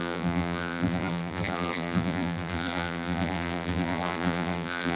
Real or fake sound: fake